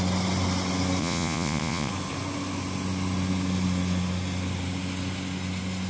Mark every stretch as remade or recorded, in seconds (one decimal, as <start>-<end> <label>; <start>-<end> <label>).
0.0-1.0 recorded; 1.0-1.9 remade; 1.9-5.9 recorded

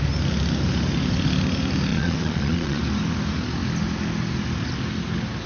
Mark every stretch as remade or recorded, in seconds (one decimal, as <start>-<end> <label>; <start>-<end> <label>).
0.0-1.9 recorded; 1.9-2.8 remade; 2.8-5.5 recorded

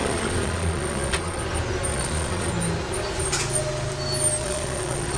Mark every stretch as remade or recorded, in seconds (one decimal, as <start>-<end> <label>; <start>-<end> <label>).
0.0-1.4 remade; 1.4-1.9 recorded; 1.9-2.5 remade; 2.5-4.4 recorded; 4.4-5.2 remade

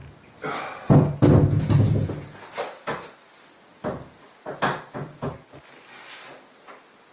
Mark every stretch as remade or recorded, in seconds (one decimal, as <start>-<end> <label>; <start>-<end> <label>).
0.0-7.1 recorded

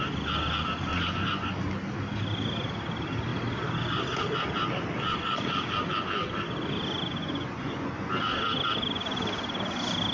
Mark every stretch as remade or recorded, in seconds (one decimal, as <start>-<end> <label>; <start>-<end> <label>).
0.0-0.9 recorded; 0.9-1.5 remade; 1.5-7.2 recorded; 7.2-8.1 remade; 8.1-10.1 recorded

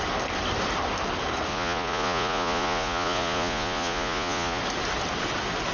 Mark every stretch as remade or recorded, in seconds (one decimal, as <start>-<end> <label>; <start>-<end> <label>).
0.0-1.5 recorded; 1.5-4.6 remade; 4.6-5.7 recorded